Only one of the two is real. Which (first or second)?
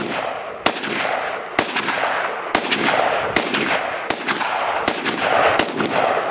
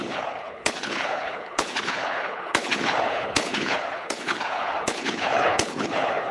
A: first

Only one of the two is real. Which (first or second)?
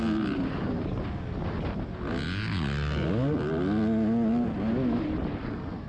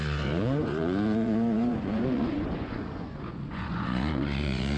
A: first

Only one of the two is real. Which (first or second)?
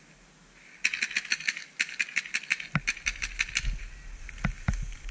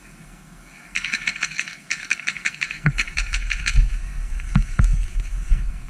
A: first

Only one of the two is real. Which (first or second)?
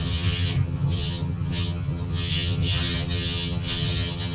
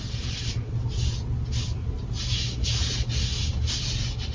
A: second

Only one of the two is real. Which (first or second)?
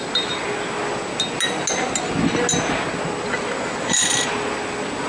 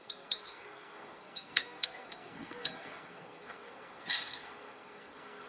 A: first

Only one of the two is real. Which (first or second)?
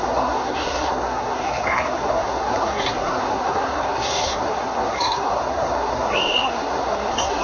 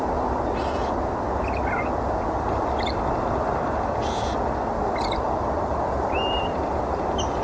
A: second